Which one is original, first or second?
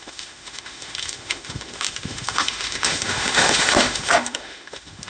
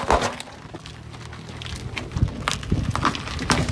second